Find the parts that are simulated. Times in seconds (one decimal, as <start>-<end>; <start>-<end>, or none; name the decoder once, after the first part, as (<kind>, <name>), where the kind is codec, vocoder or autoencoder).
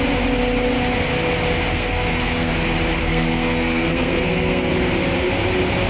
1.7-2.5 (codec, SNAC); 3.0-4.7